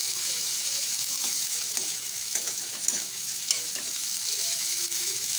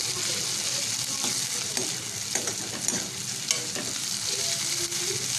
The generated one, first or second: first